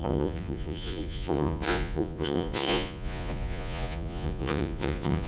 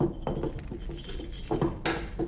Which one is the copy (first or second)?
first